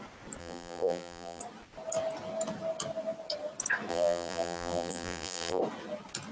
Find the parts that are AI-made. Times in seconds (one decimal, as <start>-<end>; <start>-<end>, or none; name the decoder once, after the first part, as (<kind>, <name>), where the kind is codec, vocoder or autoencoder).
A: 0.4-1.4 (vocoder, BigVGAN v2); 3.9-5.6